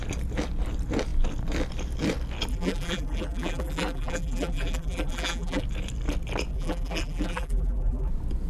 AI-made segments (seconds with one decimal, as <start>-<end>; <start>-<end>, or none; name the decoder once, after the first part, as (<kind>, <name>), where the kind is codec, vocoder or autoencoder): 2.5-5.6 (vocoder, BigVGAN v2); 6.5-8.1